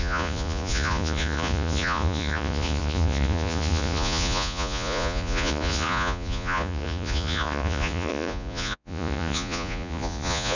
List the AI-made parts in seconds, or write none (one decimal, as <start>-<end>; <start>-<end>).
0.0-10.6